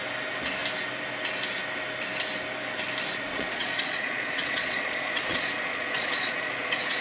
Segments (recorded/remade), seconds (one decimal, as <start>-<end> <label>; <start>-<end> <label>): 0.0-3.3 recorded; 3.3-7.0 remade